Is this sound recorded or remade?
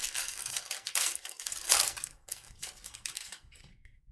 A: remade